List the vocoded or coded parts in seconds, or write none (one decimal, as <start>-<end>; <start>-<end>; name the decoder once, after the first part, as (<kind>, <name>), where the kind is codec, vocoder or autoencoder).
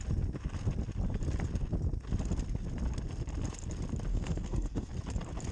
4.1-4.9 (codec, SNAC)